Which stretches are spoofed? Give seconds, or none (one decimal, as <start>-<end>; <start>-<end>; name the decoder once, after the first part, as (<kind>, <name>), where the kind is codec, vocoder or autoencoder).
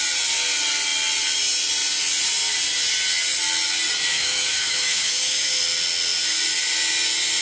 4.1-5.6 (autoencoder, DAC-VAE)